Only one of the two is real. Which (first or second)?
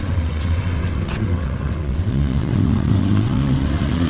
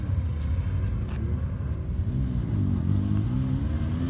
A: second